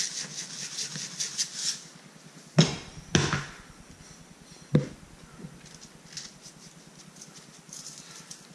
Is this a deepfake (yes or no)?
no